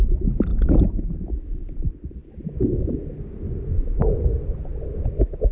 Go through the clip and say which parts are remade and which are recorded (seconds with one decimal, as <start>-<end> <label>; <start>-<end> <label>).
0.0-5.5 recorded